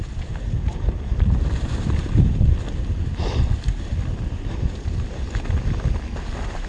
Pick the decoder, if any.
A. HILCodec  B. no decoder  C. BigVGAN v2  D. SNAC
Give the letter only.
C